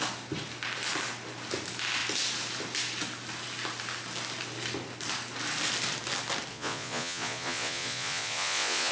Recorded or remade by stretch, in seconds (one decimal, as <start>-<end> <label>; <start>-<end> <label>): 0.0-6.5 recorded; 6.5-8.9 remade